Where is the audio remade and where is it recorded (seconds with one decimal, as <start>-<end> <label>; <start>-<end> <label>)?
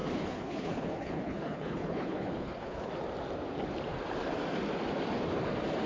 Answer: 0.0-2.9 remade; 2.9-5.9 recorded